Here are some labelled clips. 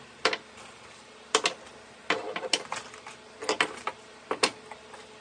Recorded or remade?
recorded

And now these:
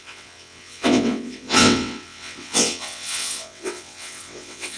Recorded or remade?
remade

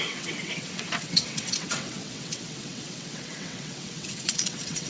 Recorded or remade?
remade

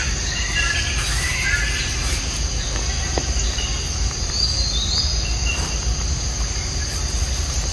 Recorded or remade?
recorded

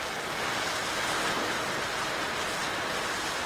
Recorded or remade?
recorded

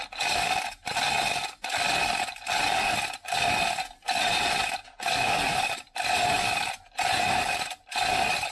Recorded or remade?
recorded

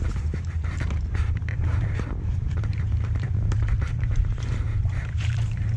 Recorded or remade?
remade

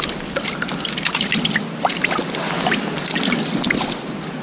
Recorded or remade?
recorded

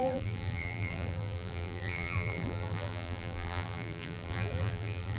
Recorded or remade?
remade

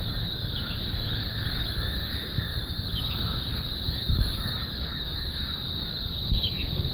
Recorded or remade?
remade